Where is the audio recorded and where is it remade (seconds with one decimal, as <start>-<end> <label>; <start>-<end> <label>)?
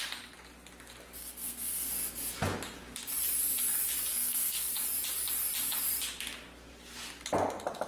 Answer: 0.0-1.2 recorded; 1.2-1.9 remade; 1.9-4.1 recorded; 4.1-4.7 remade; 4.7-7.9 recorded